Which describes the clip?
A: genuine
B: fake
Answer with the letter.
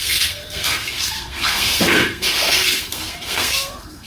B